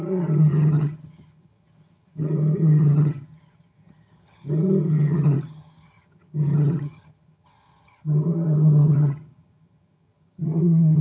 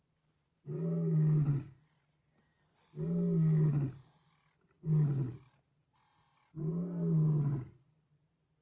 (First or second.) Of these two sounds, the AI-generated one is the first